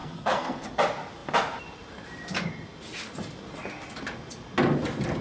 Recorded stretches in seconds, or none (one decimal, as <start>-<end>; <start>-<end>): 0.7-5.2